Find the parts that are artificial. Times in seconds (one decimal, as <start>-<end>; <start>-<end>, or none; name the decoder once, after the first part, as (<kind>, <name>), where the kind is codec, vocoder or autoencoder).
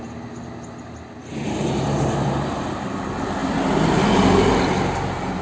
1.2-2.8 (vocoder, BigVGAN v2); 3.4-4.6